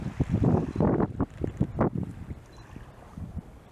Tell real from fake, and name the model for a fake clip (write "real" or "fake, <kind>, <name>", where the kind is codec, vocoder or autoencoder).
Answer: real